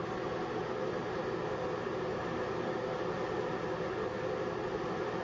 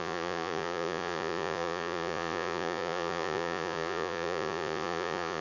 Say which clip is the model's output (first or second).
second